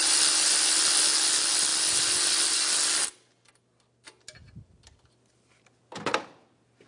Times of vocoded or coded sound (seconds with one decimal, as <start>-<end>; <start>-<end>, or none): none